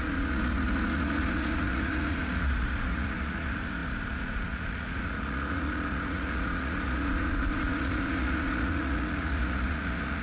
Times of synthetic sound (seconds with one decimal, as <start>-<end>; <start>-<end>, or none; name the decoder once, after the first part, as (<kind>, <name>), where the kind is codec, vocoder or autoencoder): 0.0-10.2 (vocoder, Vocos)